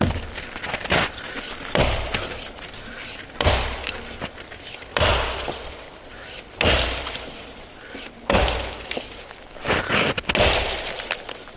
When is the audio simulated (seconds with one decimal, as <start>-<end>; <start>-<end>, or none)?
none